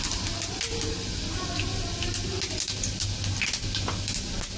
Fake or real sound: real